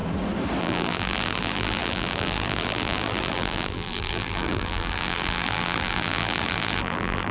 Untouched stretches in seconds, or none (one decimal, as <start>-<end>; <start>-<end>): 0.0-0.6

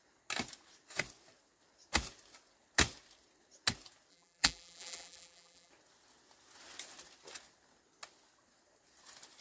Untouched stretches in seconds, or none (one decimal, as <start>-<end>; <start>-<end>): 0.0-4.1; 5.7-9.4

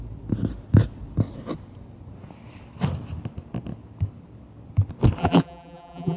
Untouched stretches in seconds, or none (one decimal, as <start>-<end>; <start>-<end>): 0.0-5.2

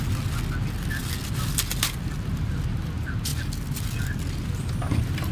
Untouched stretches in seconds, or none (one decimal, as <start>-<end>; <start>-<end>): 0.0-5.3

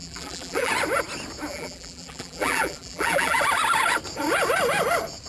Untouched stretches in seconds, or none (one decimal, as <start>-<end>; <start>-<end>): 0.7-1.5; 3.4-5.3